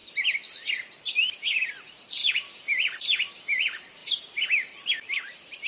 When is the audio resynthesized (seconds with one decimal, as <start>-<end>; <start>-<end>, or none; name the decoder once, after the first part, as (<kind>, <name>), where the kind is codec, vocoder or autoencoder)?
1.7-5.7 (vocoder, BigVGAN v2)